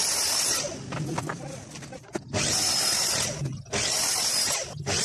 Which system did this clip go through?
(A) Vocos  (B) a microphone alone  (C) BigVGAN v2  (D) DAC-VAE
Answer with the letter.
B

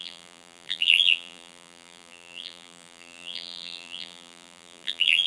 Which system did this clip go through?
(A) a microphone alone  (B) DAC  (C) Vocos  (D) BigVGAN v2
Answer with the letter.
D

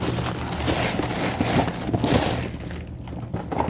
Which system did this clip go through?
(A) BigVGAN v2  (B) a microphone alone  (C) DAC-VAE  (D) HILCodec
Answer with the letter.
B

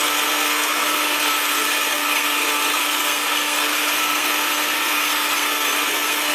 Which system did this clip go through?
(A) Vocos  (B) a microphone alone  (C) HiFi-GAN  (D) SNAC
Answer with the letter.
D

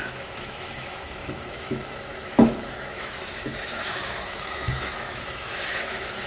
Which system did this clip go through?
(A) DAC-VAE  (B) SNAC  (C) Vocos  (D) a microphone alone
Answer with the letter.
A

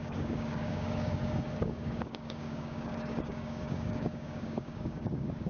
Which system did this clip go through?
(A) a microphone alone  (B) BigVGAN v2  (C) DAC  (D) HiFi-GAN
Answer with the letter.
C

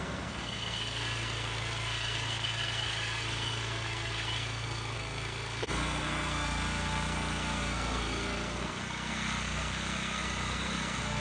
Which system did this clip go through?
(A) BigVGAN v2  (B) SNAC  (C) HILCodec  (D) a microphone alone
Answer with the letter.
B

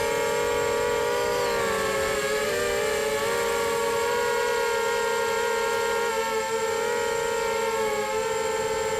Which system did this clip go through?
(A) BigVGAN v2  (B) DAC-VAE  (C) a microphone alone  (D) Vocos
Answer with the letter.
C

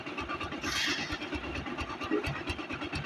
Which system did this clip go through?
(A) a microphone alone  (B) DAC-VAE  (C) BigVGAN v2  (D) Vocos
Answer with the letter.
A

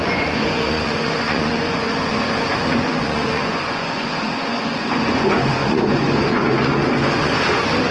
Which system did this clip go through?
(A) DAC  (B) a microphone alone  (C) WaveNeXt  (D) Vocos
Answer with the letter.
D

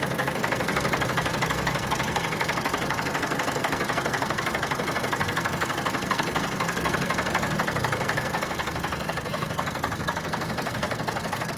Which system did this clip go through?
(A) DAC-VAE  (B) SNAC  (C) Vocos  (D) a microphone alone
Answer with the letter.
B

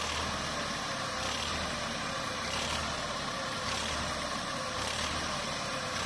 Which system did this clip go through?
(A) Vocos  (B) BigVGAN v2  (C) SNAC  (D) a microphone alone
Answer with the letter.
B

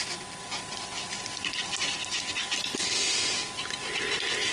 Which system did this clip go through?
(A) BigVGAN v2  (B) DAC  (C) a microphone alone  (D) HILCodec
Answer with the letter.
C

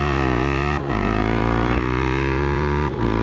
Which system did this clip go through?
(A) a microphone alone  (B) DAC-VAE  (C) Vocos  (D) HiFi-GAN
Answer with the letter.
C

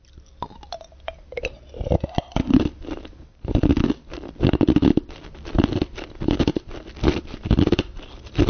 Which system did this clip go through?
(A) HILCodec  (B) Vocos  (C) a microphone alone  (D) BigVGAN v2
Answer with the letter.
C